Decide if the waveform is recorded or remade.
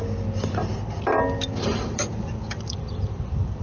recorded